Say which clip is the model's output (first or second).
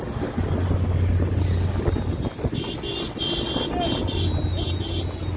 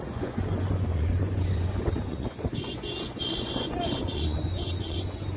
second